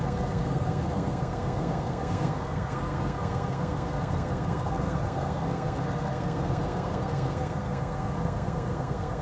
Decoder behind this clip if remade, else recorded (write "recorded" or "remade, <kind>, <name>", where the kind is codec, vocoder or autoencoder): remade, codec, SNAC